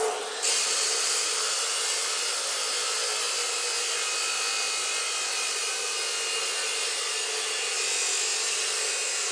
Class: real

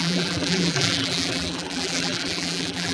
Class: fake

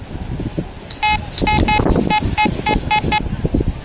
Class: real